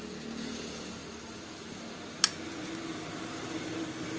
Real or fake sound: real